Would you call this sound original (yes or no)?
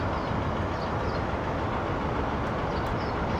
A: yes